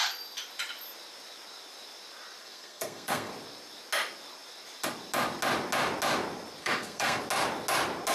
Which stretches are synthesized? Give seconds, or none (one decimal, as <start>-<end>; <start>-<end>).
2.4-3.3; 6.6-7.2